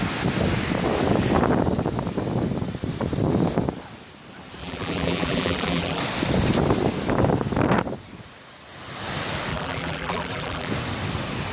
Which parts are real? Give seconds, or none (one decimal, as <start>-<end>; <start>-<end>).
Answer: 0.0-4.6; 6.0-9.5; 10.7-11.5